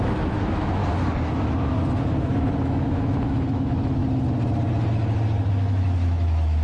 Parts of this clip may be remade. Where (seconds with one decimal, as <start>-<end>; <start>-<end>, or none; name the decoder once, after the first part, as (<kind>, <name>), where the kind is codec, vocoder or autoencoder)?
0.0-0.8 (autoencoder, DAC-VAE); 2.0-4.0; 5.5-6.6